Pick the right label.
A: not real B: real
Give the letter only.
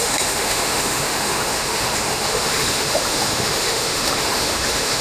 A